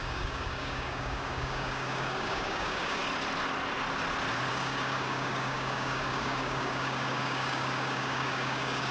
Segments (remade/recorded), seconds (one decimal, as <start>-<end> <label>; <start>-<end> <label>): 0.0-3.0 remade; 3.0-4.5 recorded; 4.5-8.9 remade

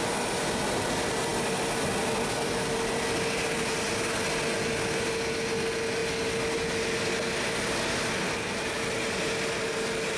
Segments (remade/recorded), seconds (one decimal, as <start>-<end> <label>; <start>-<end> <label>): 0.0-10.2 recorded

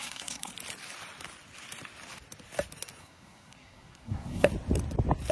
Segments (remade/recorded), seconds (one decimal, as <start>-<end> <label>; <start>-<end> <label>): 0.0-0.5 remade; 0.5-3.0 recorded; 3.0-4.5 remade; 4.5-5.3 recorded